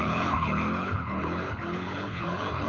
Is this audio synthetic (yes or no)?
yes